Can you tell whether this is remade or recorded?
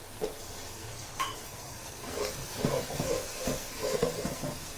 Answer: remade